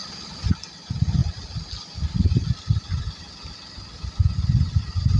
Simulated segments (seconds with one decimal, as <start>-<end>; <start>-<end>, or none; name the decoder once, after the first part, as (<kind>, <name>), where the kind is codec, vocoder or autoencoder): 0.0-0.5 (vocoder, BigVGAN v2); 1.2-3.5